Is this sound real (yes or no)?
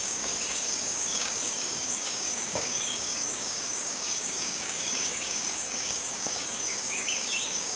no